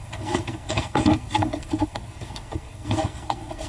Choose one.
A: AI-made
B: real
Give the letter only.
A